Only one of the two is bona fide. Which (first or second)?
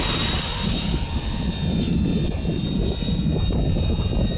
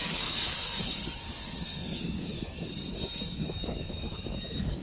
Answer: first